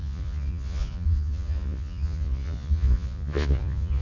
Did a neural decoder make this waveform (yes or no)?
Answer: yes